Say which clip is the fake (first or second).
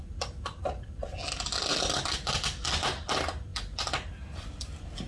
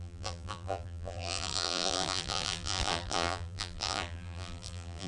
second